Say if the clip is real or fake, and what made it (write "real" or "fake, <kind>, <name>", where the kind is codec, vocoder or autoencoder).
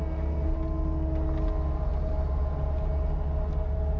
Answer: real